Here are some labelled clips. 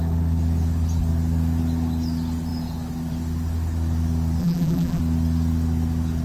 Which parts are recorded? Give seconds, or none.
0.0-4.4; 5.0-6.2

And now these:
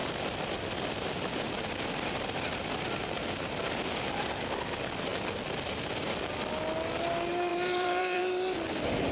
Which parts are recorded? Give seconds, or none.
4.2-7.5; 8.2-9.1

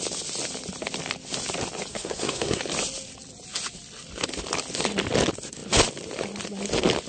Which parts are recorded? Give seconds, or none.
0.0-1.9; 2.6-7.1